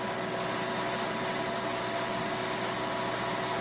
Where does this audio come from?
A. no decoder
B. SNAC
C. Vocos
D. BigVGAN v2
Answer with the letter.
A